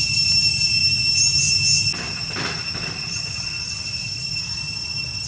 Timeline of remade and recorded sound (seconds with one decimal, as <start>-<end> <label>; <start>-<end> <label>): 0.0-0.8 remade; 0.8-4.0 recorded; 4.0-5.3 remade